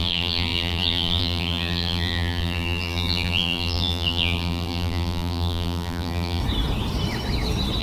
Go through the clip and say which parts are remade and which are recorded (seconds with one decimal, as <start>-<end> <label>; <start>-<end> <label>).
0.0-6.4 remade; 6.4-7.8 recorded